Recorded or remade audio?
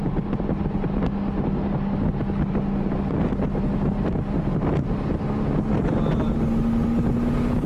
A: recorded